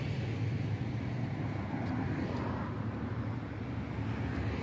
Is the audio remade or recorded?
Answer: recorded